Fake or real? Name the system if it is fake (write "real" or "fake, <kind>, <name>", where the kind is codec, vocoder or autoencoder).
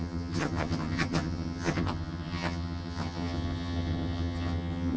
fake, vocoder, HiFi-GAN